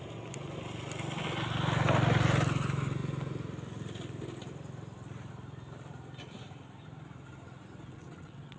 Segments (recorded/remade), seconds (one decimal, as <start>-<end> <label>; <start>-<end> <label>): 0.0-7.9 recorded; 7.9-8.6 remade